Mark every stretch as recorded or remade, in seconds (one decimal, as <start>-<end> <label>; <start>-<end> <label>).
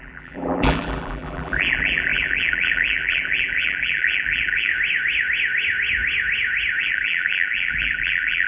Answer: 0.0-4.7 remade; 4.7-6.8 recorded; 6.8-8.5 remade